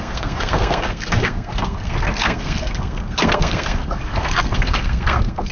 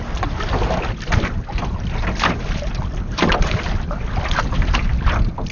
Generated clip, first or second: first